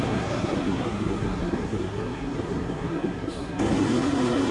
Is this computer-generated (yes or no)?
yes